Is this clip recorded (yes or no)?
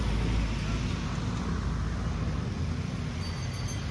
yes